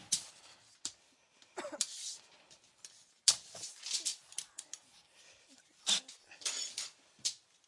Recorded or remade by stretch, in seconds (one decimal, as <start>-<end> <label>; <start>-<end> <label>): 0.0-7.7 recorded